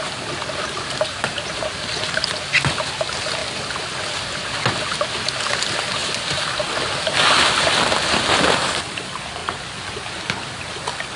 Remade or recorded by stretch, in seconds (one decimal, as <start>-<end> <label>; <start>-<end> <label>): 0.0-11.2 recorded